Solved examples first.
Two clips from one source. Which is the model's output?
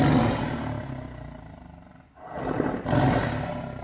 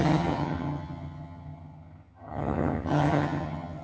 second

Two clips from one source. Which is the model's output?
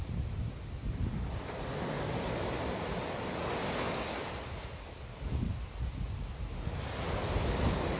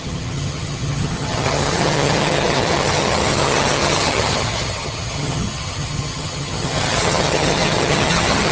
second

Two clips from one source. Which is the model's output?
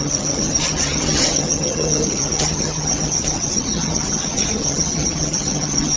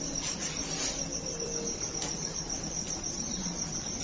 first